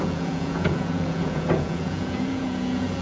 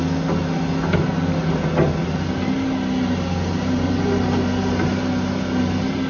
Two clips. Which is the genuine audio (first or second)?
second